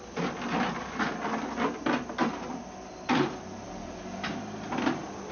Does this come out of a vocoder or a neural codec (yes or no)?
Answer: no